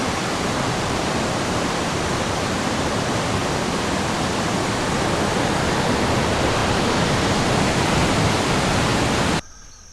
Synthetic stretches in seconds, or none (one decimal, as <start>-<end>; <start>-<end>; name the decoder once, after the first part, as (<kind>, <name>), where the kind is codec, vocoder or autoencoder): 0.0-3.4 (vocoder, BigVGAN v2); 6.1-6.6; 8.4-8.9